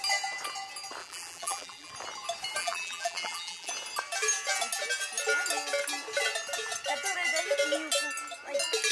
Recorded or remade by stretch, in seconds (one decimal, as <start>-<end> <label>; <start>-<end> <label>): 0.0-1.0 recorded; 1.0-1.9 remade; 1.9-2.6 recorded; 2.6-3.7 remade; 3.7-8.9 recorded

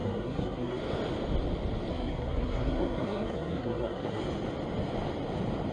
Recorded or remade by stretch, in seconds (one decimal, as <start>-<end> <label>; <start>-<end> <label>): 0.0-0.8 remade; 0.8-1.9 recorded; 1.9-4.2 remade; 4.2-5.7 recorded

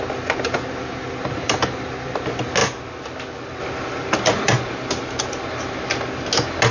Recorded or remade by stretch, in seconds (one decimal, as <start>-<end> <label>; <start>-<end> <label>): 0.0-6.7 recorded

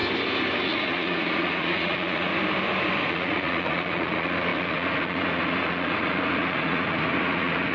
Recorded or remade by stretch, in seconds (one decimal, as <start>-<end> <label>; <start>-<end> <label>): 0.0-0.6 recorded; 0.6-2.3 remade; 2.3-3.1 recorded; 3.1-7.7 remade

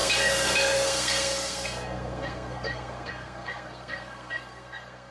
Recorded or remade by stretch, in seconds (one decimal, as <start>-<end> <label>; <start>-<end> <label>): 0.0-5.1 remade

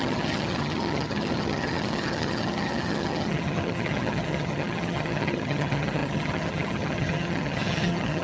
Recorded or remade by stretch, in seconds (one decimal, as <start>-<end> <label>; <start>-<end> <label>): 0.0-8.2 remade

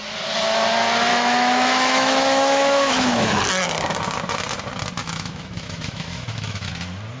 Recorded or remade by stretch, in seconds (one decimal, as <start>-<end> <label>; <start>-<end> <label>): 0.0-1.1 recorded; 1.1-3.4 remade; 3.4-5.0 recorded; 5.0-6.7 remade; 6.7-7.2 recorded

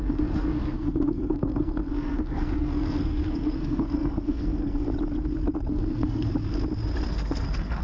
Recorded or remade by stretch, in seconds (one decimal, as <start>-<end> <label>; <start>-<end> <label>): 0.0-4.9 remade; 4.9-5.7 recorded; 5.7-6.3 remade; 6.3-7.1 recorded; 7.1-7.8 remade